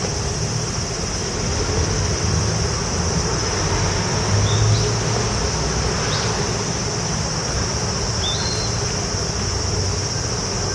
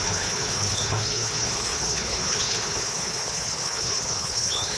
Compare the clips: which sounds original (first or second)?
first